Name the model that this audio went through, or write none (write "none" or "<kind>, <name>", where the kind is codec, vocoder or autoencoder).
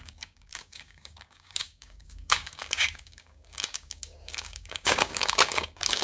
codec, DAC